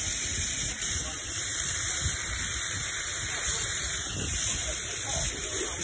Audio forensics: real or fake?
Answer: fake